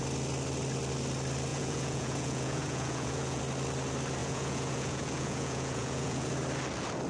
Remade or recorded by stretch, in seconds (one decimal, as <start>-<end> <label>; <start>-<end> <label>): 0.0-1.5 recorded; 1.5-3.4 remade; 3.4-4.2 recorded; 4.2-6.3 remade; 6.3-7.1 recorded